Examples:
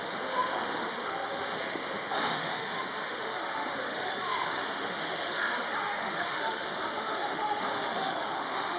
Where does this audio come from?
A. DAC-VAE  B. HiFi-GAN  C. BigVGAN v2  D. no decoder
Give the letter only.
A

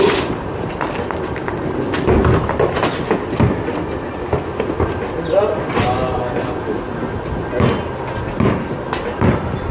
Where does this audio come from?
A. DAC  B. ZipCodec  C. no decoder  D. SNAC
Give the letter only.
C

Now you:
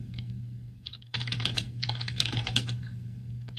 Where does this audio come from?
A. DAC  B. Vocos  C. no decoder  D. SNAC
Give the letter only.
D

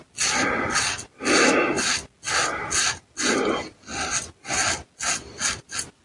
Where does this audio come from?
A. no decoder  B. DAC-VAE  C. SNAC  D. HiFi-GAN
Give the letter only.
A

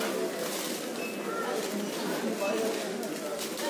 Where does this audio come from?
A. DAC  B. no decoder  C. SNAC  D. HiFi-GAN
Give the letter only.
B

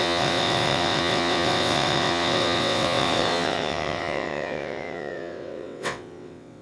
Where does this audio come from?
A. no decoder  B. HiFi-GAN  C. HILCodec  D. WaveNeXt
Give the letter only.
D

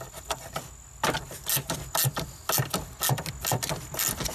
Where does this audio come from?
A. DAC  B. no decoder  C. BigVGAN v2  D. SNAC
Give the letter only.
B